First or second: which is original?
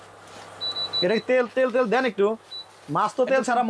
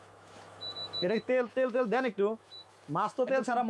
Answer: first